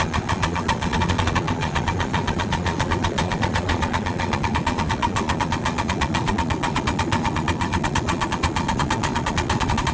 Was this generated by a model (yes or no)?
yes